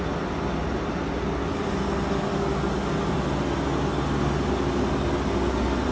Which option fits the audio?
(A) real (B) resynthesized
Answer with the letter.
A